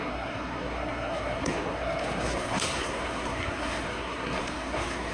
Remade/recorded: remade